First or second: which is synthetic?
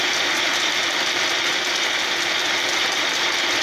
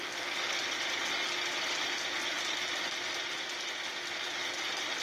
first